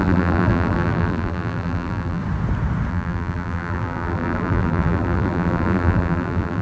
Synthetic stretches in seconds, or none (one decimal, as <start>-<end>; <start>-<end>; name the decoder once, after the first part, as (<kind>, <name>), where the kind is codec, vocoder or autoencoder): 0.0-2.2 (vocoder, BigVGAN v2); 2.9-6.6